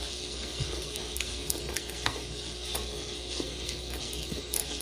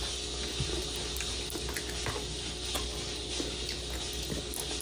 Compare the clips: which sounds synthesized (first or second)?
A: first